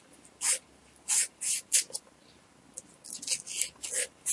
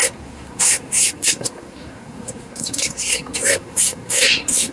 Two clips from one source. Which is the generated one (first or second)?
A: second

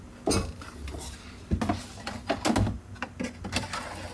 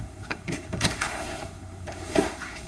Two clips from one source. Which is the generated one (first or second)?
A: second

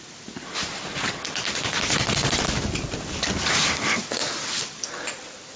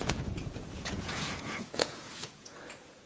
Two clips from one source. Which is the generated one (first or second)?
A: second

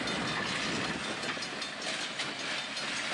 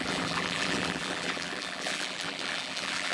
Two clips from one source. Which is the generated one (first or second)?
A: second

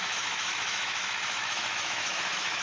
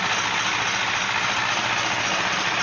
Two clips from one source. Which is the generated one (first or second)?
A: first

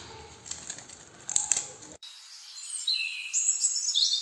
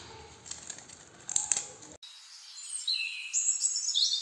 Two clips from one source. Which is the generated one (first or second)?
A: first